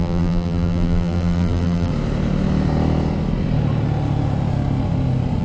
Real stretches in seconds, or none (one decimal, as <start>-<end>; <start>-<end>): 1.9-5.4